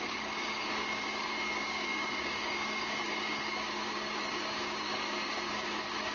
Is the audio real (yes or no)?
no